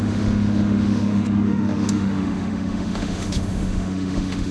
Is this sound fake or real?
fake